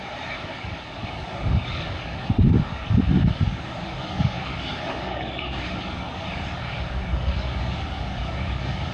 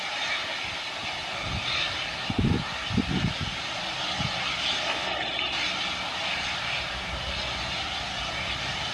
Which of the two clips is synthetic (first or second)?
first